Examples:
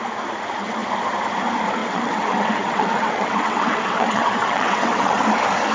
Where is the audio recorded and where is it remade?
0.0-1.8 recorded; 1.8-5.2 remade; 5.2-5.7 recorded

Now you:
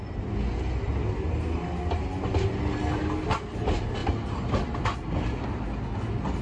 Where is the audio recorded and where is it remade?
0.0-6.4 recorded